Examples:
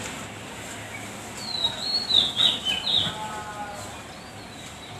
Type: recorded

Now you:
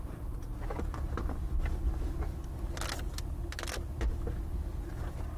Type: recorded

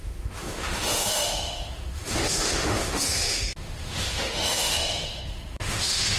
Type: remade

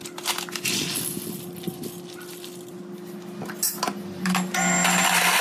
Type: recorded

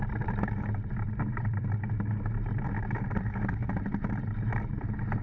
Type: remade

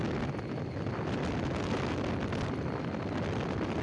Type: recorded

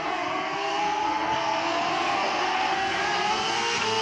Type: remade